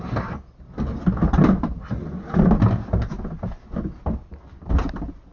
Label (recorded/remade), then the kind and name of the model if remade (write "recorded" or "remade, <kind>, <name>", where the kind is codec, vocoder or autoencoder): recorded